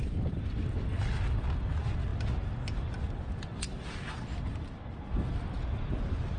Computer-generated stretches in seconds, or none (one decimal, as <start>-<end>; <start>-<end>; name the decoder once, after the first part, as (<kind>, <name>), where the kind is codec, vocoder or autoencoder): none